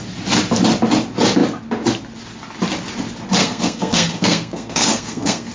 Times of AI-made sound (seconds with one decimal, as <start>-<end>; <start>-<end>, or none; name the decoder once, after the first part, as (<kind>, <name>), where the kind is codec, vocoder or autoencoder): 3.4-5.5 (codec, SNAC)